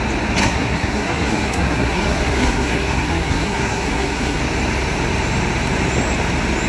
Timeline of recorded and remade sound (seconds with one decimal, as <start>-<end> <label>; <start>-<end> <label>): 0.0-0.4 recorded; 0.4-4.4 remade; 4.4-6.7 recorded